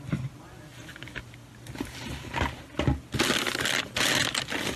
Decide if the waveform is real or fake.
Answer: real